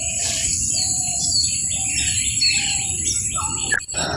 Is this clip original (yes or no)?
yes